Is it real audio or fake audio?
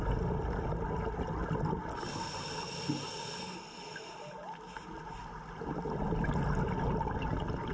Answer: real